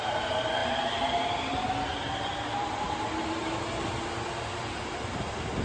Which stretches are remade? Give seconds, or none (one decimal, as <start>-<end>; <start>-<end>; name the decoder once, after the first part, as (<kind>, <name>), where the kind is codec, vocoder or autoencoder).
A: none